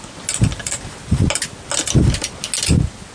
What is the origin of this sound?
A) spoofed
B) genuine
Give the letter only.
B